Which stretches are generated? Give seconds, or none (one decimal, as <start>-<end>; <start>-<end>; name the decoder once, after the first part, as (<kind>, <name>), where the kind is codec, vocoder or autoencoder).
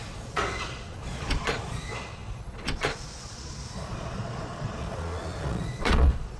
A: 0.0-6.4 (vocoder, Vocos)